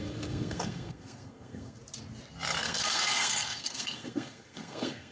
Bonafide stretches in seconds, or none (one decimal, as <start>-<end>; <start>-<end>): 1.8-2.6